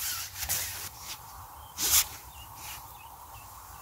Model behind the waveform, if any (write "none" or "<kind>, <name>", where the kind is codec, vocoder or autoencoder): vocoder, BigVGAN v2